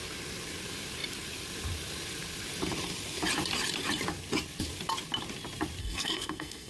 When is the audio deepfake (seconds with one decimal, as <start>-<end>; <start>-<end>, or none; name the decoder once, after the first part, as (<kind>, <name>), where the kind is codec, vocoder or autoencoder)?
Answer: 5.8-6.7 (codec, SNAC)